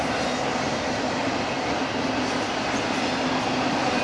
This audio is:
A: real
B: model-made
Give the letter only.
A